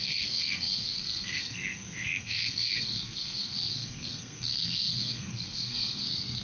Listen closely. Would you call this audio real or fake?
fake